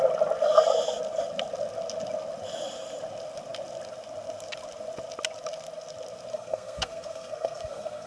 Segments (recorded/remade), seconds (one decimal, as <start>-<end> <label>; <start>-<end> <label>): 0.0-6.3 recorded; 6.3-8.1 remade